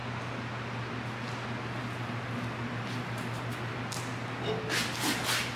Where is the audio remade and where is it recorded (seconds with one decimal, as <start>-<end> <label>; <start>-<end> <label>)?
0.0-5.6 recorded